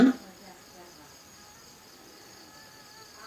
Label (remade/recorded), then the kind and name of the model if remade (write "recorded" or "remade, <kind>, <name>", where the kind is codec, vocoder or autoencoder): recorded